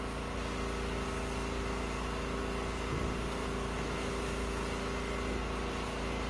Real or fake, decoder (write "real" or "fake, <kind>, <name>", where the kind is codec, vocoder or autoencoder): real